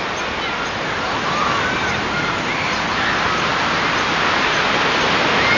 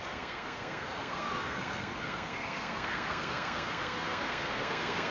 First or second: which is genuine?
first